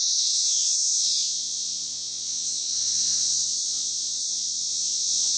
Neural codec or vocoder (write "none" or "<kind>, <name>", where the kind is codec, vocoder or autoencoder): vocoder, Vocos